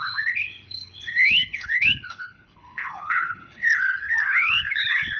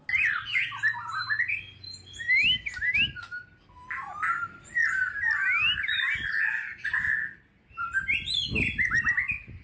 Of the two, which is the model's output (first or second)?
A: first